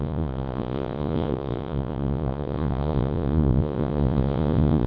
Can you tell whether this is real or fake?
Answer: fake